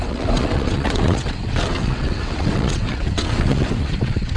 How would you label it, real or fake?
fake